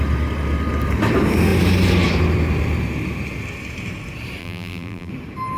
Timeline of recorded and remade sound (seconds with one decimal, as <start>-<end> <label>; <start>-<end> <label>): 0.0-4.4 recorded; 4.4-5.1 remade; 5.1-5.6 recorded